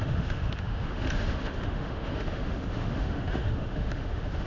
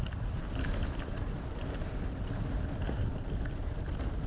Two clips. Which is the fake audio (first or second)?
first